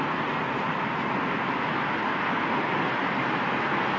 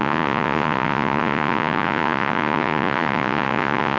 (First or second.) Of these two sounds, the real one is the first